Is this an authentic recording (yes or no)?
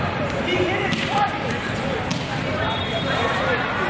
no